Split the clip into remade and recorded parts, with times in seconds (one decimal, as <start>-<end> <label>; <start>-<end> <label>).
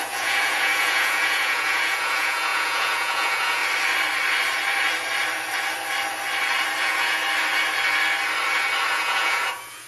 0.0-3.6 remade; 3.6-6.8 recorded; 6.8-7.2 remade; 7.2-8.9 recorded; 8.9-9.9 remade